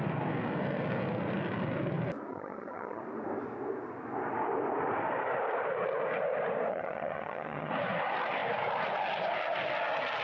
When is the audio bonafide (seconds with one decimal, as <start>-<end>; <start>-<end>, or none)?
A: 0.0-2.3; 3.0-6.7; 7.7-10.2